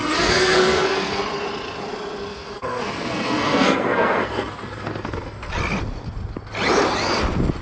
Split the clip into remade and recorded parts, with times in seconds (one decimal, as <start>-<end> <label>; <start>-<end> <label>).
0.0-1.2 remade; 1.2-2.3 recorded; 2.3-5.5 remade; 5.5-7.6 recorded